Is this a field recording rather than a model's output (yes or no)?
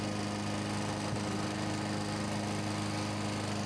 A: yes